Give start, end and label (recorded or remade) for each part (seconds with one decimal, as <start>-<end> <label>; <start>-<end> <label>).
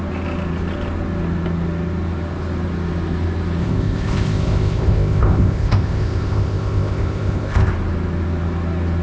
0.0-3.6 recorded; 3.6-7.7 remade; 7.7-9.0 recorded